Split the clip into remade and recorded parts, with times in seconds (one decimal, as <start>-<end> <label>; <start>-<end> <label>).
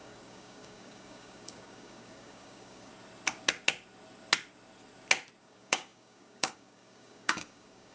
0.0-2.9 remade; 2.9-5.4 recorded; 5.4-7.9 remade